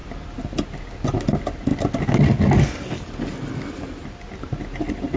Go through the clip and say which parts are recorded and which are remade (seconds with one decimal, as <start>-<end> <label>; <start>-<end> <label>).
0.0-5.2 recorded